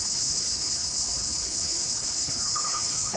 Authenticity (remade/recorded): remade